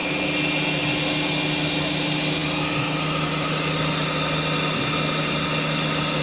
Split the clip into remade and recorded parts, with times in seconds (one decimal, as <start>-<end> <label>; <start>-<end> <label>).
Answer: 0.0-6.2 recorded